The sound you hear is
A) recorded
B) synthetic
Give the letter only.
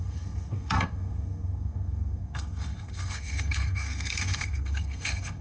B